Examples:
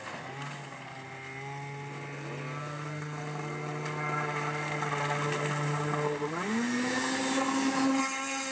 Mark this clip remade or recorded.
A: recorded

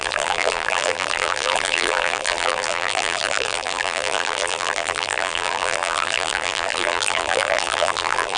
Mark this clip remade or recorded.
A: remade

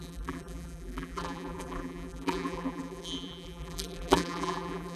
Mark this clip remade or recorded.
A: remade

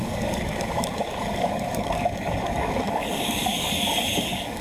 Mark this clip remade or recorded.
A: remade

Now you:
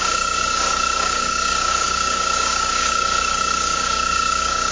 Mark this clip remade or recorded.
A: remade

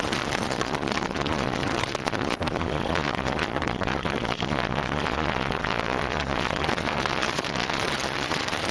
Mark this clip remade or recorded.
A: remade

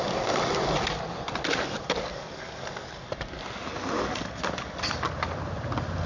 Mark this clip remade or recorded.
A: remade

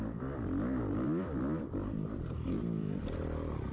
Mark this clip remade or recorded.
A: remade